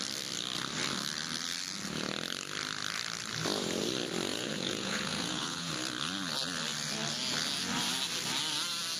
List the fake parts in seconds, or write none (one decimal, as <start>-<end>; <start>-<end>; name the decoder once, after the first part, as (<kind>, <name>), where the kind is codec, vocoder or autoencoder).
4.3-5.7 (vocoder, Vocos)